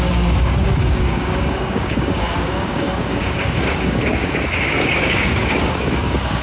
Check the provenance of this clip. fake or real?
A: fake